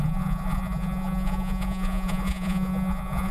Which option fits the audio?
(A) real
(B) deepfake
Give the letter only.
B